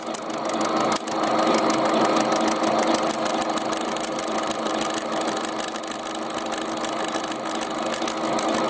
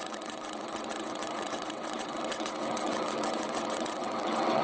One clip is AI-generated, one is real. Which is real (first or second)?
first